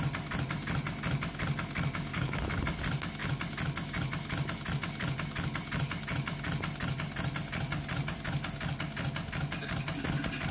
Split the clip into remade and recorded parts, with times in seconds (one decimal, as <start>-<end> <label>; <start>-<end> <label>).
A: 0.0-2.1 recorded; 2.1-2.6 remade; 2.6-10.5 recorded